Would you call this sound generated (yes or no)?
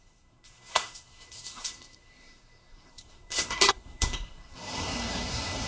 yes